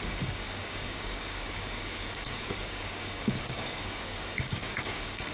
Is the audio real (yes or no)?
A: no